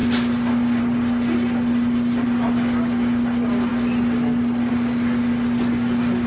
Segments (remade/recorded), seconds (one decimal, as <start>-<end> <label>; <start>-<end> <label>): 0.0-6.3 recorded

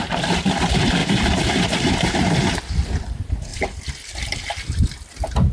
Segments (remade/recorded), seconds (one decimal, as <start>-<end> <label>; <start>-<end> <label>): 0.0-5.5 recorded

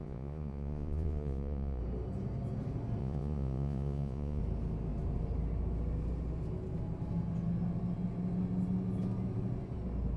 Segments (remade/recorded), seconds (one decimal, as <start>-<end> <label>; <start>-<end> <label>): 0.0-1.8 remade; 1.8-3.0 recorded; 3.0-4.4 remade; 4.4-10.2 recorded

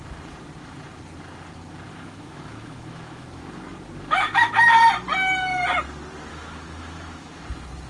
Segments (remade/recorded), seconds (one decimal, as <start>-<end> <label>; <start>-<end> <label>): 0.0-1.9 recorded; 1.9-3.4 remade; 3.4-6.3 recorded; 6.3-7.4 remade; 7.4-7.9 recorded

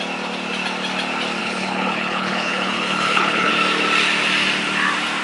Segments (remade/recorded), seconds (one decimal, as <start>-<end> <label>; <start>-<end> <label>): 0.0-1.4 recorded; 1.4-3.5 remade; 3.5-5.2 recorded

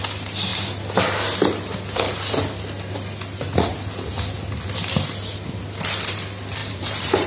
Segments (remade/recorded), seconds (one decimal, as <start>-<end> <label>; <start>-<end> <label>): 0.0-6.6 recorded; 6.6-7.3 remade

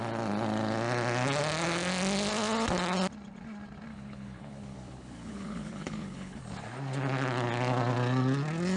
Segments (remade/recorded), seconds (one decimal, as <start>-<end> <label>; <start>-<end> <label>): 0.0-3.9 recorded; 3.9-6.4 remade; 6.4-8.8 recorded